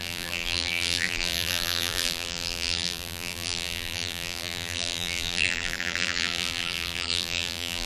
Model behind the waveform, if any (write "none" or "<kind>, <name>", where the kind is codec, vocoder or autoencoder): vocoder, BigVGAN v2